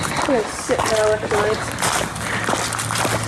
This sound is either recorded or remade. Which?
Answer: recorded